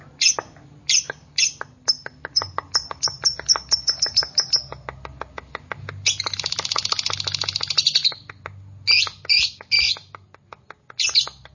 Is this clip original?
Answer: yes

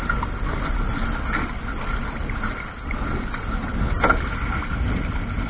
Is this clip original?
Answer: yes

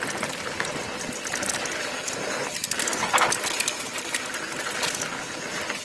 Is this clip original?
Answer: yes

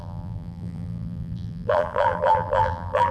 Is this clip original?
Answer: no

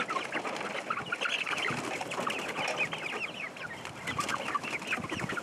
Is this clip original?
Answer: yes